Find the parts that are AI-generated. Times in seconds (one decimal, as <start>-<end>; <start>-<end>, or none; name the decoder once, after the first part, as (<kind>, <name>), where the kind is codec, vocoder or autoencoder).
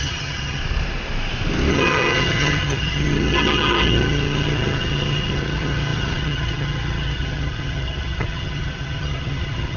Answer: 0.0-0.6 (vocoder, HiFi-GAN); 1.7-9.8